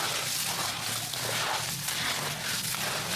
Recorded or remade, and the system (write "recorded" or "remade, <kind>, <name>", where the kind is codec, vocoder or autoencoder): recorded